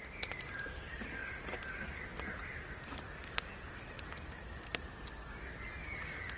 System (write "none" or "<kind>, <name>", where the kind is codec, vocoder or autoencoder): none